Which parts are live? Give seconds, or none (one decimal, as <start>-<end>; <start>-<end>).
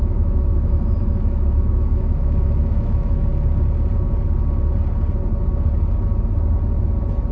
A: 3.3-7.3